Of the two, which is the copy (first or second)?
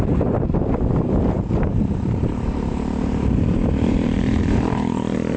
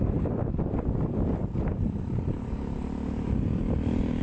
first